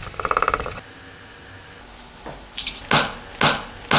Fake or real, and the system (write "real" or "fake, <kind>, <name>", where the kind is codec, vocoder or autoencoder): real